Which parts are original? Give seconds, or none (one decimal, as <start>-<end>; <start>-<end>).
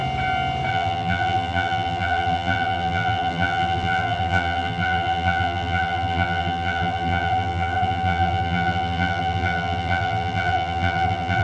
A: 0.0-0.7